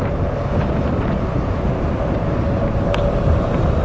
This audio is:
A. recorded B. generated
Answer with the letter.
A